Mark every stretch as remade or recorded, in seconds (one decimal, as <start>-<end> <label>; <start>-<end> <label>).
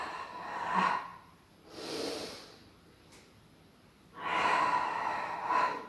0.0-1.1 recorded; 1.1-4.0 remade; 4.0-5.9 recorded